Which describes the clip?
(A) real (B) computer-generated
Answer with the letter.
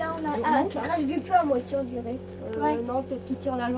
B